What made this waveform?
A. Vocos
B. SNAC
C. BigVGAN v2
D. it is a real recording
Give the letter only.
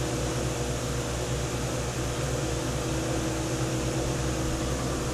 D